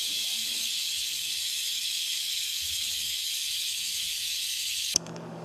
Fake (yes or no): yes